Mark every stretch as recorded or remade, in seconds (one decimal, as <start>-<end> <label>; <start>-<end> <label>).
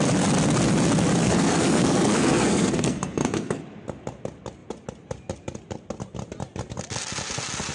0.0-1.2 recorded; 1.2-3.6 remade; 3.6-7.7 recorded